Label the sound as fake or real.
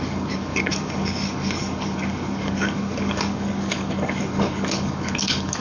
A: fake